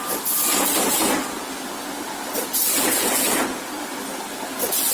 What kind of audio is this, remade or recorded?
recorded